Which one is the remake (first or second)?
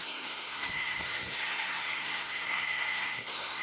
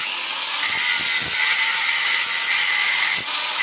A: first